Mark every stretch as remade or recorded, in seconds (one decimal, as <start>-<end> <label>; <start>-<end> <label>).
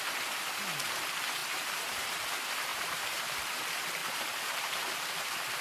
0.0-1.4 recorded; 1.4-2.2 remade; 2.2-2.7 recorded; 2.7-3.6 remade; 3.6-4.0 recorded; 4.0-5.6 remade